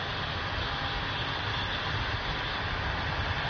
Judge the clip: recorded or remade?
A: recorded